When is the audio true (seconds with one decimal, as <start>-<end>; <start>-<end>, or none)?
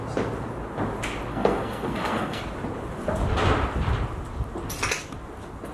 0.0-1.3; 2.4-5.7